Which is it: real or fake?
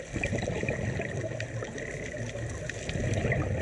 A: real